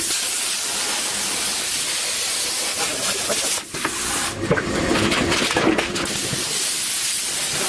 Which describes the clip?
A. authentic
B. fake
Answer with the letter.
A